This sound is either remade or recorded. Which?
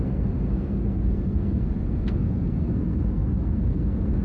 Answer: remade